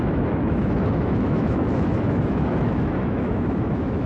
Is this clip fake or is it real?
fake